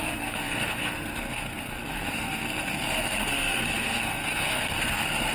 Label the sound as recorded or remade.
remade